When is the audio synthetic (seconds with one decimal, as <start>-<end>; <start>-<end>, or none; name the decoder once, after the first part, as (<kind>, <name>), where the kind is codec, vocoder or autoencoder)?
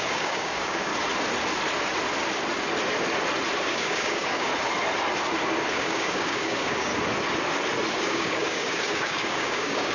0.0-0.9 (codec, DAC); 3.6-4.5; 5.7-6.9; 8.0-9.9